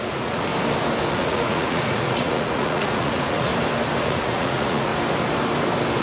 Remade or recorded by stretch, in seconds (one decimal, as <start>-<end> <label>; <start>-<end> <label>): 0.0-0.5 remade; 0.5-1.1 recorded; 1.1-3.5 remade; 3.5-4.0 recorded; 4.0-4.9 remade; 4.9-6.0 recorded